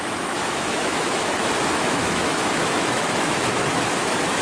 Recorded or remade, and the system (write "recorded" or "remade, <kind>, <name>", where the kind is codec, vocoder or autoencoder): remade, autoencoder, DAC-VAE